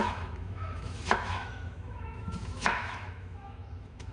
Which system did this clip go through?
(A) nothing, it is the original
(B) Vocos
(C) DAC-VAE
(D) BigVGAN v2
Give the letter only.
C